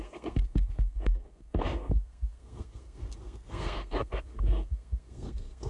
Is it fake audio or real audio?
fake